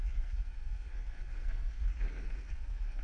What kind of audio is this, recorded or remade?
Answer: remade